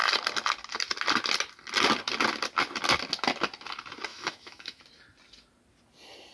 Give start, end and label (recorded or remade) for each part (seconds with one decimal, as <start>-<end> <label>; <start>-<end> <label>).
0.0-4.1 recorded; 4.1-4.8 remade; 4.8-6.3 recorded